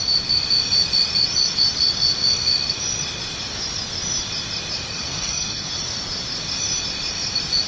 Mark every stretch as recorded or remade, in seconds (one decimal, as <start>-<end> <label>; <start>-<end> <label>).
0.0-4.9 recorded; 4.9-5.7 remade; 5.7-7.7 recorded